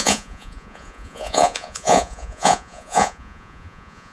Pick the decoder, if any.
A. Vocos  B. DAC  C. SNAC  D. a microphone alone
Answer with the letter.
A